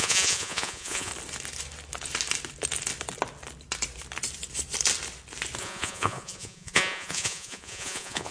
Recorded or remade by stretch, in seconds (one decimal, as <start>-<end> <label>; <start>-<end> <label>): 0.0-1.1 remade; 1.1-5.6 recorded; 5.6-8.3 remade